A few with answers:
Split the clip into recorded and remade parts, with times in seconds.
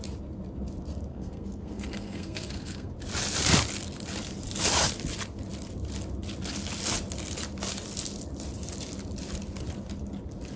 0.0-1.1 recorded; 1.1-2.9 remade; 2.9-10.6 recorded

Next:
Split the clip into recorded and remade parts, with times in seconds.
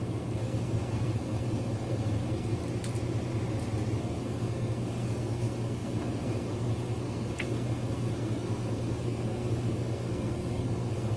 0.0-2.6 remade; 2.6-4.0 recorded; 4.0-11.2 remade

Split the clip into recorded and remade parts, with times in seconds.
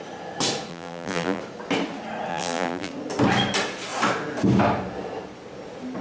0.0-0.7 recorded; 0.7-1.4 remade; 1.4-2.3 recorded; 2.3-2.9 remade; 2.9-6.0 recorded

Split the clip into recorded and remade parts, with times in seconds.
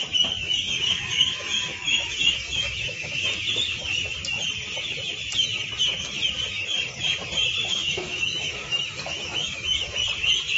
0.0-0.4 recorded; 0.4-3.2 remade; 3.2-7.6 recorded; 7.6-10.0 remade; 10.0-10.6 recorded